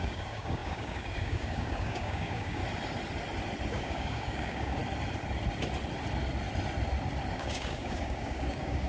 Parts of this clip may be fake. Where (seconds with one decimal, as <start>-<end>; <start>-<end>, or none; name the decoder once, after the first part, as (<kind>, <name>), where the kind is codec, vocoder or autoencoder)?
0.0-2.6 (codec, DAC); 3.7-4.8; 7.3-8.9